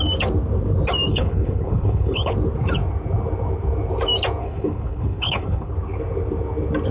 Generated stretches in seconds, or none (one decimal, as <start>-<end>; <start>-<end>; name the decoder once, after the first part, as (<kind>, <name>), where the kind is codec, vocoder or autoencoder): 1.1-2.3 (codec, HILCodec); 4.4-5.7